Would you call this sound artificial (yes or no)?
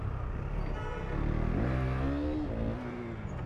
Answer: no